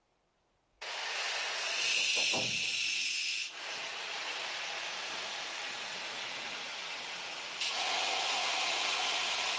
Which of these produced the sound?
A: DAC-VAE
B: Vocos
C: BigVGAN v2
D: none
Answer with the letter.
B